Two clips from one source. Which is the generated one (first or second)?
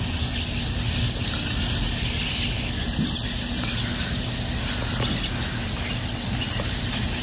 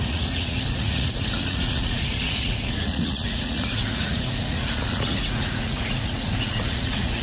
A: second